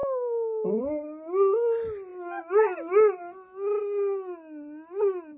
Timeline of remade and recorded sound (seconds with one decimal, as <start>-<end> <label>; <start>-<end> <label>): 0.0-0.8 remade; 0.8-5.4 recorded